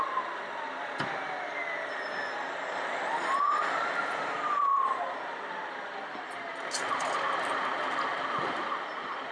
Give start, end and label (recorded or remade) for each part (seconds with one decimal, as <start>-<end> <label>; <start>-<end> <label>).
0.0-9.3 recorded